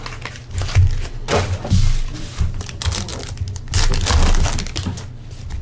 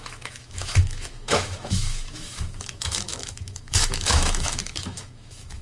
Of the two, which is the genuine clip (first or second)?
first